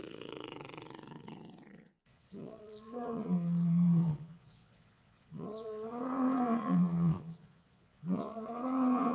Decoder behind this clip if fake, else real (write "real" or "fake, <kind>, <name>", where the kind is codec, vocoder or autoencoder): fake, vocoder, Vocos